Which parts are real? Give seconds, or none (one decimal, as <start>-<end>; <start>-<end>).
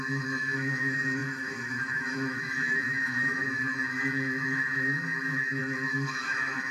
none